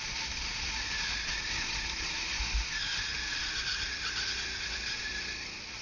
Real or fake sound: real